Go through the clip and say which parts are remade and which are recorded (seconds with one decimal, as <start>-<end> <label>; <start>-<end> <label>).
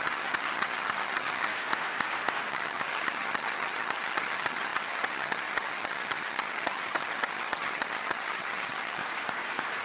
0.0-1.5 remade; 1.5-2.5 recorded; 2.5-9.0 remade; 9.0-9.8 recorded